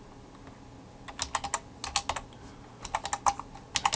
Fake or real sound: real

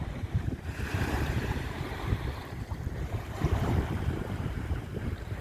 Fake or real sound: fake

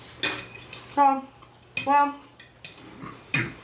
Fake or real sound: real